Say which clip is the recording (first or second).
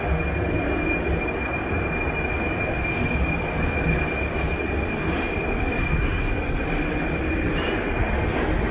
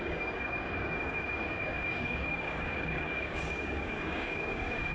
first